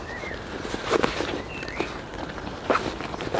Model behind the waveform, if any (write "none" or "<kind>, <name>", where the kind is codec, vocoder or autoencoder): none